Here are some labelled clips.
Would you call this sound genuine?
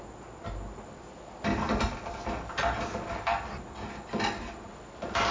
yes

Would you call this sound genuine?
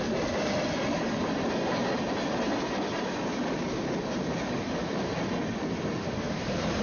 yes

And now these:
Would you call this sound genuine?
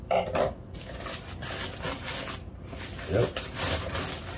yes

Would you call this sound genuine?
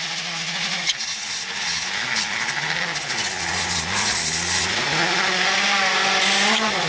yes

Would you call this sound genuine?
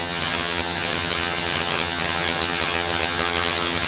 no